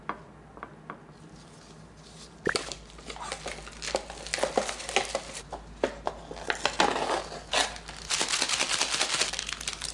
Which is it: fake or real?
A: real